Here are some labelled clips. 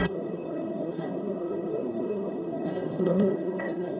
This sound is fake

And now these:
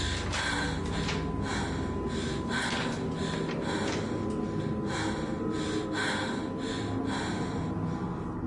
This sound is real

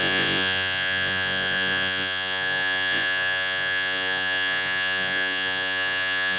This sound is fake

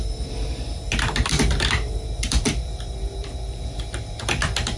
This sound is fake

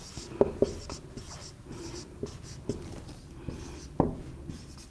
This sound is real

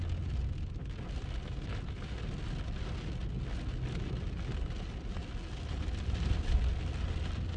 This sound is real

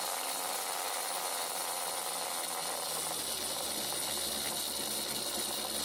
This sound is real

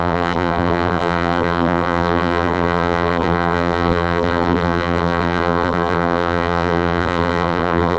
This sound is fake